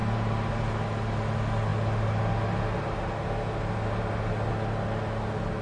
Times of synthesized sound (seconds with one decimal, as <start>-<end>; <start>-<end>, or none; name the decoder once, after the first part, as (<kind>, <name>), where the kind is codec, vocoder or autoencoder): 0.0-0.6 (vocoder, BigVGAN v2)